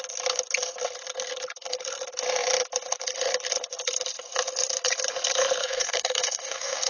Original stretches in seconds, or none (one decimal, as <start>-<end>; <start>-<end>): 0.0-5.6